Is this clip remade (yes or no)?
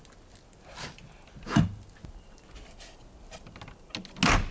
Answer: no